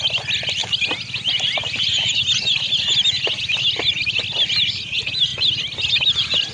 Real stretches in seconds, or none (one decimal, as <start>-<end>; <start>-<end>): 0.0-6.5